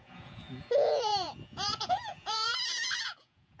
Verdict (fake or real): fake